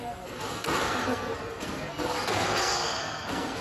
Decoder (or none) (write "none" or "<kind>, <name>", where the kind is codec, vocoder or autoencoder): codec, SNAC